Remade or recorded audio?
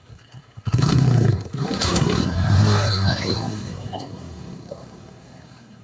remade